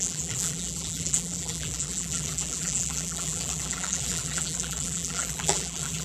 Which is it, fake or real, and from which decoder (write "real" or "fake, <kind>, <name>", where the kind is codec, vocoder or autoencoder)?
fake, vocoder, BigVGAN v2